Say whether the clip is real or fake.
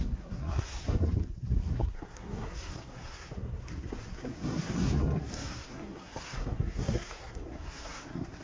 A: fake